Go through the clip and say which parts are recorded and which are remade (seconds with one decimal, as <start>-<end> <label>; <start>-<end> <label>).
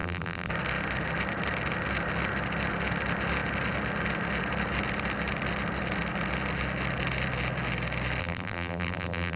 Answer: 0.0-0.5 remade; 0.5-8.2 recorded; 8.2-9.4 remade